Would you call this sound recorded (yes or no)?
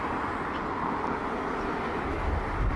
yes